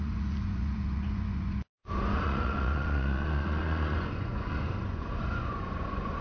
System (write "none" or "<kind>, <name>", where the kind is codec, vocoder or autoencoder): vocoder, Vocos